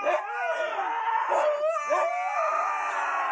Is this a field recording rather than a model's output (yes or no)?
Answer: yes